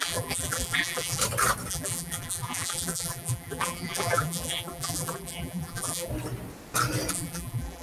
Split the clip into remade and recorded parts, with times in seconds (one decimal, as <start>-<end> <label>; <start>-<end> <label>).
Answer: 0.0-1.2 remade; 1.2-1.7 recorded; 1.7-6.1 remade; 6.1-7.1 recorded; 7.1-7.8 remade

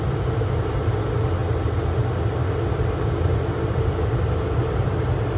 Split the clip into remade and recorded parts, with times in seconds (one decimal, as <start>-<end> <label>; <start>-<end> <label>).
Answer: 0.0-1.4 remade; 1.4-4.5 recorded; 4.5-5.4 remade

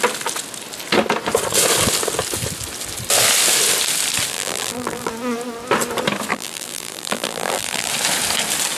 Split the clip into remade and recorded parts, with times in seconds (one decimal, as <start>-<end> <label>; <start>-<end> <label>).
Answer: 0.0-4.3 recorded; 4.3-5.1 remade; 5.1-6.3 recorded; 6.3-7.9 remade; 7.9-8.8 recorded